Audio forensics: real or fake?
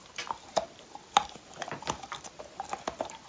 real